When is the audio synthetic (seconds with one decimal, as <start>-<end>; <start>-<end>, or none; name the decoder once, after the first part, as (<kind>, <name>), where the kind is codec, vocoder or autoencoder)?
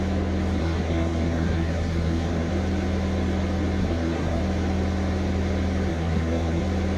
0.6-2.5 (codec, SNAC); 3.8-4.4; 5.9-6.6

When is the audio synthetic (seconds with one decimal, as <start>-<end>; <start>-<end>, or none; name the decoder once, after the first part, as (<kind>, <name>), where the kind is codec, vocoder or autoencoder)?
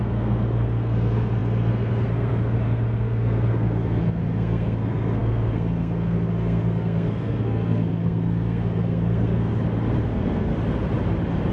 0.0-9.5 (codec, SNAC); 10.0-10.5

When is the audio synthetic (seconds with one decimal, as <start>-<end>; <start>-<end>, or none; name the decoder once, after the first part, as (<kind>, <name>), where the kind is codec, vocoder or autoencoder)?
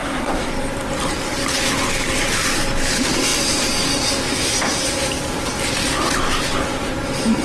0.0-0.5 (codec, SNAC)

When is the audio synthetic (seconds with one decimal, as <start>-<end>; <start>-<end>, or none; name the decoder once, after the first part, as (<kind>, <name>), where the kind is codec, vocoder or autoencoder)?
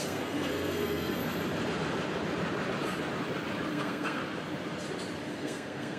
0.0-1.2 (codec, SNAC); 3.7-4.2; 5.3-6.0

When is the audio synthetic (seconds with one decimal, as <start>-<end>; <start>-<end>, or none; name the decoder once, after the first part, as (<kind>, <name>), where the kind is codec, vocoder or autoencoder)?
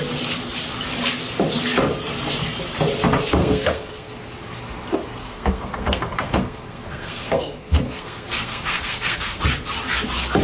3.4-4.2 (codec, SNAC); 5.2-9.4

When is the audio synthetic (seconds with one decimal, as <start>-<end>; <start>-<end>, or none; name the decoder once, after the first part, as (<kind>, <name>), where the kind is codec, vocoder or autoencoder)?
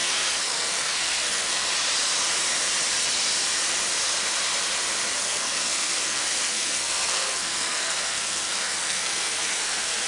0.0-1.7 (codec, SNAC); 5.2-10.1